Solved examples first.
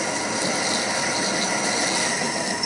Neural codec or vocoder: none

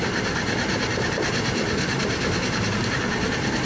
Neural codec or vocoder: vocoder, BigVGAN v2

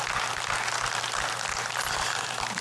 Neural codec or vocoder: none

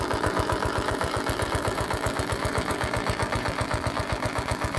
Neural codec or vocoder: vocoder, BigVGAN v2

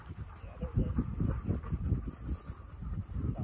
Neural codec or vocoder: none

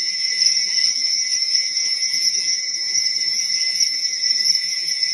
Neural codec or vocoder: vocoder, BigVGAN v2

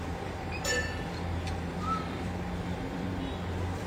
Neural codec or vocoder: vocoder, BigVGAN v2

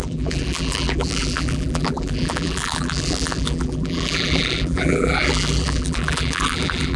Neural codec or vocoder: vocoder, BigVGAN v2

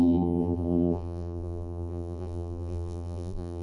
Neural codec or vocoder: vocoder, BigVGAN v2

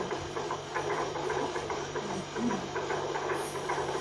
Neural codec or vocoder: vocoder, BigVGAN v2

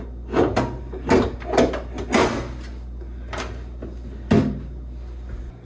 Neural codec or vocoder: none